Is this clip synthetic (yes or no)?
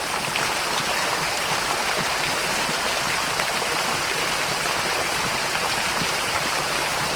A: yes